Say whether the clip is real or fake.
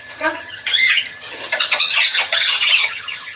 fake